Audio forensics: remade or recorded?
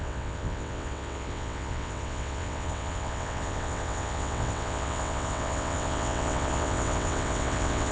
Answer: remade